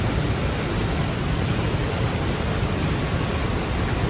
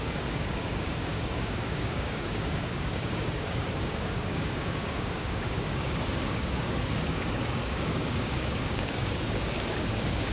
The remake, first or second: second